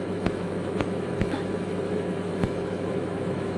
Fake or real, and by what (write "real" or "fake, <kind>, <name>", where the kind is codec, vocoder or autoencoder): fake, autoencoder, DAC-VAE